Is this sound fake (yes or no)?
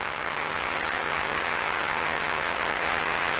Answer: yes